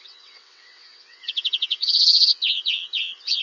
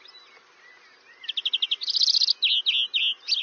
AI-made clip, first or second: first